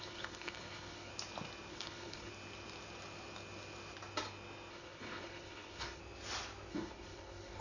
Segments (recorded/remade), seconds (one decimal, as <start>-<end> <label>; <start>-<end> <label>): 0.0-1.1 remade; 1.1-1.7 recorded; 1.7-2.3 remade; 2.3-4.7 recorded; 4.7-6.0 remade; 6.0-6.7 recorded; 6.7-7.6 remade